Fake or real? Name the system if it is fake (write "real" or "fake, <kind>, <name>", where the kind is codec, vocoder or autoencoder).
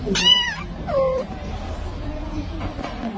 real